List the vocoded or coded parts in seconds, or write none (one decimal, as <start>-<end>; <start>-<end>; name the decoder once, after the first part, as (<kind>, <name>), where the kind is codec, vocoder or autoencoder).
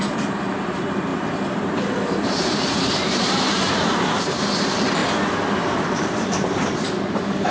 0.0-5.0 (vocoder, BigVGAN v2); 5.6-7.5